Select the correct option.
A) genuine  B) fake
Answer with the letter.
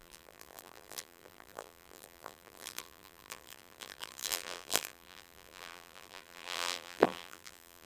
B